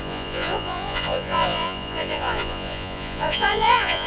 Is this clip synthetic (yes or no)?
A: yes